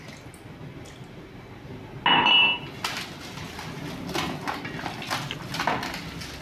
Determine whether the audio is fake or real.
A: real